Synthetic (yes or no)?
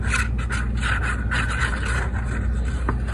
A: no